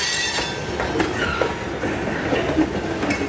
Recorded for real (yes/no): yes